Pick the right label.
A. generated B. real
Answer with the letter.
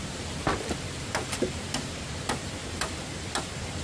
B